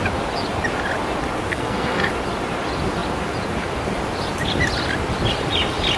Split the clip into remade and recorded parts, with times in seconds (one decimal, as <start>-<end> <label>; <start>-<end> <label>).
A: 0.0-1.5 recorded; 1.5-2.1 remade; 2.1-6.0 recorded